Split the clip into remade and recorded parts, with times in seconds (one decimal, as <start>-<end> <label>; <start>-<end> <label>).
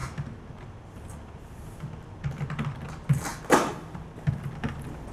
0.0-5.1 recorded